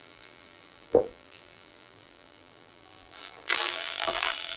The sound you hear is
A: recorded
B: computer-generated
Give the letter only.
B